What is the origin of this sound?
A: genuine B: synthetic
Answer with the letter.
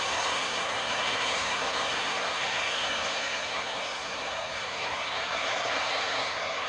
B